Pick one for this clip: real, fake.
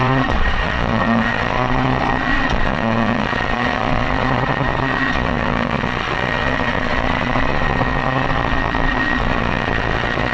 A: fake